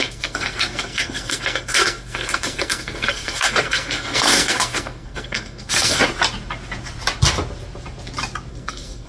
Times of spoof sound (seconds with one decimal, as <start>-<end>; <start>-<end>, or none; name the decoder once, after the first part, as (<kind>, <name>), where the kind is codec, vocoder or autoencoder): 0.0-6.0 (codec, SNAC); 8.5-9.1